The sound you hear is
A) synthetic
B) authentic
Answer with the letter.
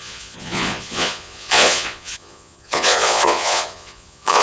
A